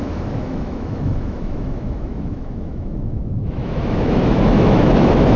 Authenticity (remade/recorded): remade